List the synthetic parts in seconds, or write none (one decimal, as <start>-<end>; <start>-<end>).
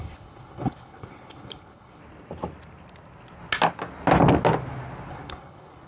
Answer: 0.0-2.0; 5.1-5.9